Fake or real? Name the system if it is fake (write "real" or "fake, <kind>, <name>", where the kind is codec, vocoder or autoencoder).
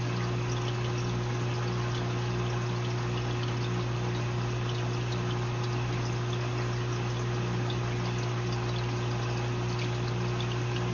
real